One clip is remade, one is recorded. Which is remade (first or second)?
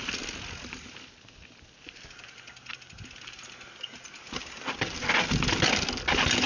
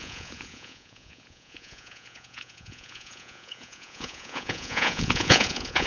second